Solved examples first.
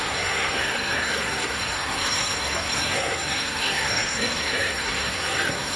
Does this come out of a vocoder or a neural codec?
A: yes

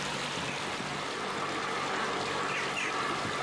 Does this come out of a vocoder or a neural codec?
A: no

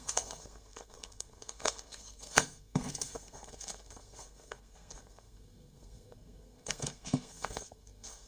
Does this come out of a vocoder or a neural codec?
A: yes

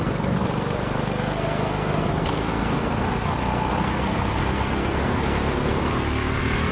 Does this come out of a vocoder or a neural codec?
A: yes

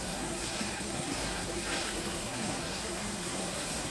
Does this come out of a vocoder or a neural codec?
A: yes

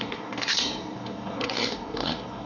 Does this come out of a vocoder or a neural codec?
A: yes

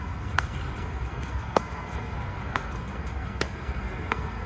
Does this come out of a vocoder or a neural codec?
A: yes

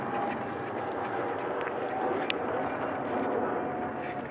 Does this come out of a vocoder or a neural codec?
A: no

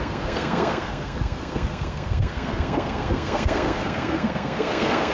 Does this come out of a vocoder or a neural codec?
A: yes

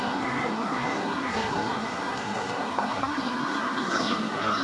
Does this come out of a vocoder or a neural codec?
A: yes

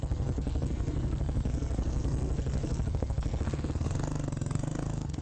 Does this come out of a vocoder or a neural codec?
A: yes